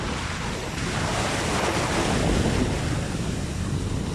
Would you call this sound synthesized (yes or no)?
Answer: no